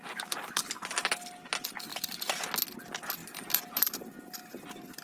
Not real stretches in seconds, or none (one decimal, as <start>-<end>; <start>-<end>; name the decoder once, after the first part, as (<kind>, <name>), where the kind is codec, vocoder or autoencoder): 3.2-3.8 (vocoder, BigVGAN v2)